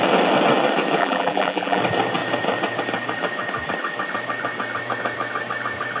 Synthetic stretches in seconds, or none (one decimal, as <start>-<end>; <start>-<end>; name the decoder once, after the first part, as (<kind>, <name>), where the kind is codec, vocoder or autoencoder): 1.0-1.8 (vocoder, BigVGAN v2)